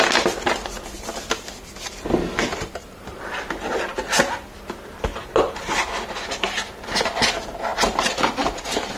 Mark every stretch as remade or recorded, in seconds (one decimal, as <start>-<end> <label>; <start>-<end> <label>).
0.0-2.5 recorded; 2.5-3.2 remade; 3.2-9.0 recorded